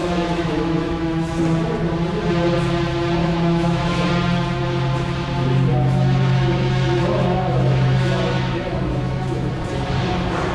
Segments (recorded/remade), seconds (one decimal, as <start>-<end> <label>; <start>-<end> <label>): 0.0-1.4 remade; 1.4-3.2 recorded; 3.2-4.1 remade; 4.1-5.7 recorded; 5.7-9.5 remade; 9.5-10.5 recorded